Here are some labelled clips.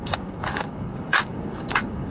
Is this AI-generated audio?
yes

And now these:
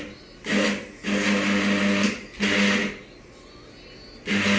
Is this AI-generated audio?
no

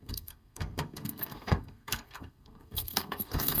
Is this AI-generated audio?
yes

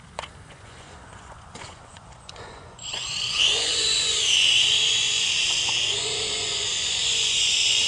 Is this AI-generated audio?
yes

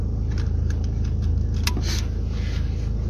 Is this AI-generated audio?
no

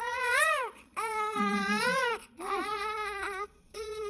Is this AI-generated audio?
yes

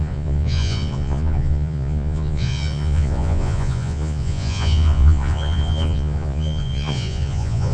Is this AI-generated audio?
yes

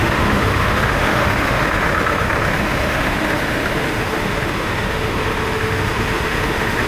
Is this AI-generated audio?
yes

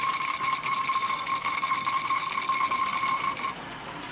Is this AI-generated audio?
no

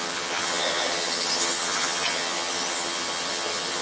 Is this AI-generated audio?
yes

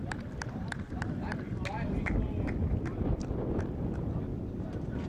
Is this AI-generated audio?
no